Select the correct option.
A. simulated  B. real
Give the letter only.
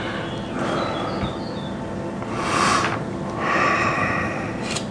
B